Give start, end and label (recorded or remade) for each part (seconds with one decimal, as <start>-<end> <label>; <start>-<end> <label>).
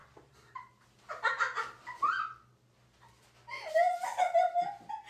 0.0-5.1 recorded